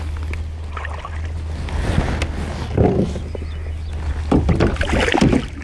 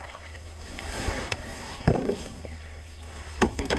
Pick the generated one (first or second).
second